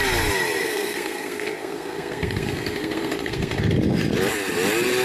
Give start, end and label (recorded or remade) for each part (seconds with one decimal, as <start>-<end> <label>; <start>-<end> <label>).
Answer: 0.0-0.6 recorded; 0.6-3.6 remade; 3.6-5.0 recorded